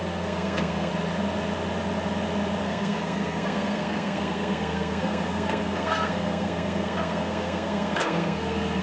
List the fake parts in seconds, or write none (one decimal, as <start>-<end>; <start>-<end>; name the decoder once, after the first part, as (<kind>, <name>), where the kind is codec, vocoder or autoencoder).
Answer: 0.0-0.9 (codec, SNAC); 2.6-8.8